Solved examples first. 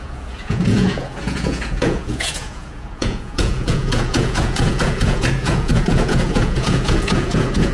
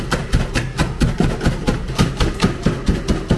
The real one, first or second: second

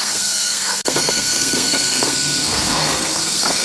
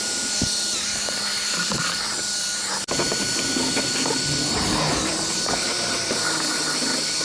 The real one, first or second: second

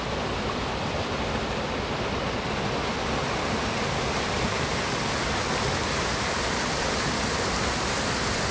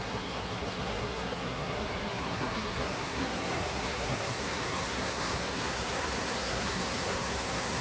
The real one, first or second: first